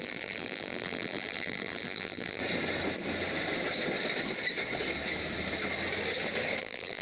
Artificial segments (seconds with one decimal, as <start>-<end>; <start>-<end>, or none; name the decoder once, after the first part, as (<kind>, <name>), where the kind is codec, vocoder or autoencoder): 0.0-2.4 (vocoder, BigVGAN v2); 6.6-7.0

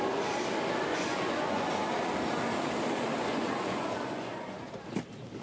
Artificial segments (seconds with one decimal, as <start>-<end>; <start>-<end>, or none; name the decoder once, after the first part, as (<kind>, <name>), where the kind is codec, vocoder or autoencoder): 0.9-1.9 (vocoder, Vocos); 3.1-4.7

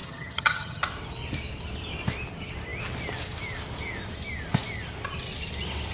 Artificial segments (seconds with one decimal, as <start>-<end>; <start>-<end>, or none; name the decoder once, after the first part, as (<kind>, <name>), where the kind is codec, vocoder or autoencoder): 0.0-0.8 (vocoder, HiFi-GAN)

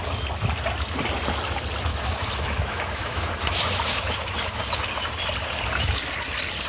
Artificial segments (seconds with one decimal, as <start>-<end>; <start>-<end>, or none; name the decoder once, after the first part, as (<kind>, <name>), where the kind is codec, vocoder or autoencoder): 1.9-4.6 (autoencoder, DAC-VAE)

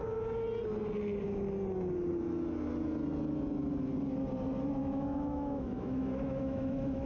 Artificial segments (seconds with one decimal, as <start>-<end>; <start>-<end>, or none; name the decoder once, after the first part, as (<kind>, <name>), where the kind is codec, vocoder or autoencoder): 4.8-7.1 (autoencoder, DAC-VAE)

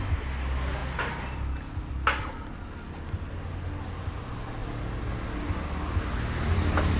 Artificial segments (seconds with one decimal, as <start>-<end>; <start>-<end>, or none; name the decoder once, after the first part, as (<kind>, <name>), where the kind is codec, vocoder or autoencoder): none